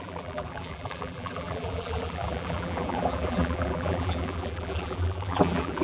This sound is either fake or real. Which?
fake